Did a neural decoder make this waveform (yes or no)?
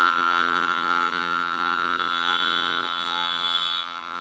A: yes